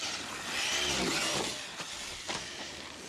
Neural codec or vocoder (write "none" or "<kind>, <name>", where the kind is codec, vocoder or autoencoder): none